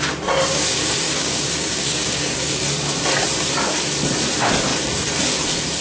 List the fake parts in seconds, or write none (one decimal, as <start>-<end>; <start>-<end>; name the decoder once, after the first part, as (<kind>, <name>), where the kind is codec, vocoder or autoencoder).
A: 0.5-2.5 (codec, DAC)